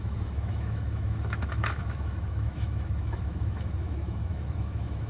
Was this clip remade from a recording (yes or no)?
yes